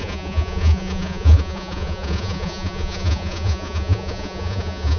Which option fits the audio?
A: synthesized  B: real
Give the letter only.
A